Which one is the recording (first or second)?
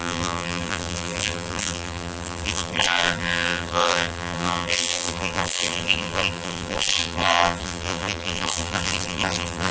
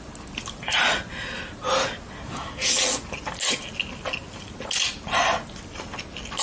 second